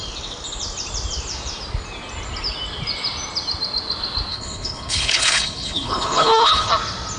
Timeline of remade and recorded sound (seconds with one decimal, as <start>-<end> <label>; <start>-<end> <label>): 0.0-4.3 recorded; 4.3-6.7 remade; 6.7-7.2 recorded